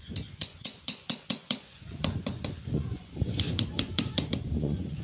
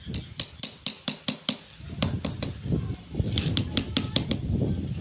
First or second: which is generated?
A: first